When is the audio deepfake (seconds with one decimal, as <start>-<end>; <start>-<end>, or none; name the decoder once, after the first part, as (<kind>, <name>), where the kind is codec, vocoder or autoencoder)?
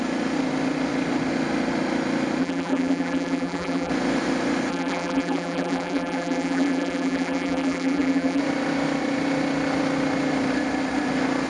2.4-3.9 (vocoder, BigVGAN v2); 4.7-8.4